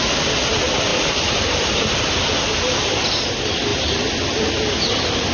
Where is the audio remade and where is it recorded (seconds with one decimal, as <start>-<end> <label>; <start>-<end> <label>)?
0.0-5.3 recorded